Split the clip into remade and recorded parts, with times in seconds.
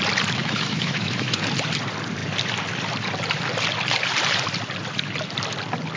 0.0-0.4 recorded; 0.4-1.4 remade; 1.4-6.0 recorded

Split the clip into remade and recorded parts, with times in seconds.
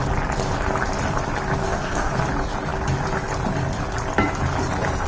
0.0-1.6 recorded; 1.6-2.2 remade; 2.2-5.1 recorded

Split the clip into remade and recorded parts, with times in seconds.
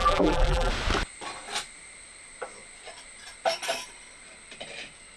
0.0-0.7 remade; 0.7-5.2 recorded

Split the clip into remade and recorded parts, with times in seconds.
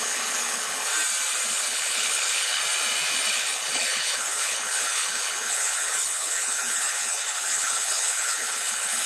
0.0-0.9 remade; 0.9-1.5 recorded; 1.5-2.6 remade; 2.6-3.3 recorded; 3.3-9.1 remade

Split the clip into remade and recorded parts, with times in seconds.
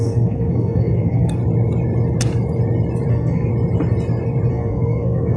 0.0-1.4 remade; 1.4-3.1 recorded; 3.1-3.5 remade; 3.5-4.5 recorded; 4.5-5.4 remade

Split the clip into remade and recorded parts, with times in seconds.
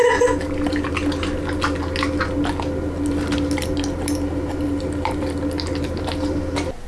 0.0-6.9 recorded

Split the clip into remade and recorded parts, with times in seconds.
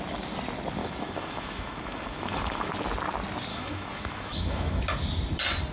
0.0-0.8 recorded; 0.8-2.7 remade; 2.7-3.5 recorded; 3.5-4.8 remade; 4.8-5.7 recorded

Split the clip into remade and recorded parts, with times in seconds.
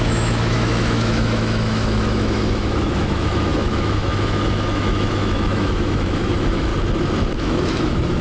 0.0-6.7 remade; 6.7-7.3 recorded; 7.3-8.2 remade